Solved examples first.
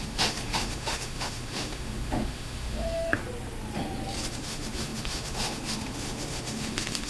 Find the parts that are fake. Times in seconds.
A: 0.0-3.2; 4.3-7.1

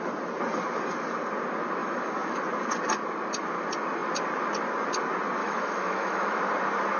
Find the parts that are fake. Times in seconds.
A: 1.8-2.4; 5.4-6.4

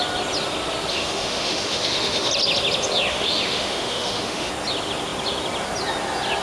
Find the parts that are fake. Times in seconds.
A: 0.9-2.3; 3.1-4.5

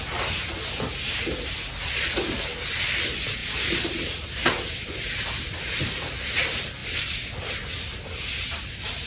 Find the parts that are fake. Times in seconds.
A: none

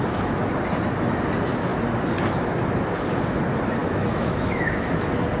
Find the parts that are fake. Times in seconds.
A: 3.8-4.9

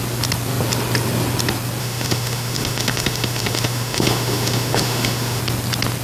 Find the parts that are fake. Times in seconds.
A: 1.8-5.4